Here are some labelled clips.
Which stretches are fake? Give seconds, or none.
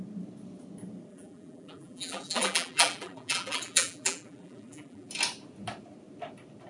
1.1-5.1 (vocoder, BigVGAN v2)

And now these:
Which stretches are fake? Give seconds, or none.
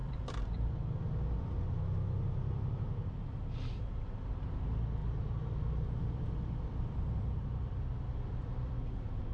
0.0-0.8 (vocoder, BigVGAN v2); 5.0-9.3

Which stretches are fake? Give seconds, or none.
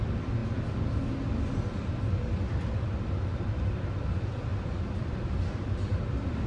0.0-0.4 (vocoder, BigVGAN v2); 2.8-6.5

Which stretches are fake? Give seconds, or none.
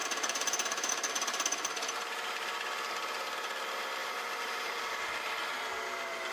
0.0-0.9 (vocoder, BigVGAN v2); 4.0-5.7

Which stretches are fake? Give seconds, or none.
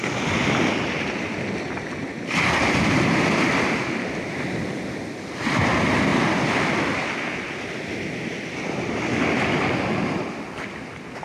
none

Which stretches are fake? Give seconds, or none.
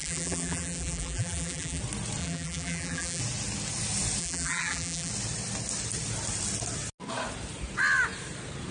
0.0-1.8 (vocoder, BigVGAN v2); 2.2-3.2; 4.2-5.1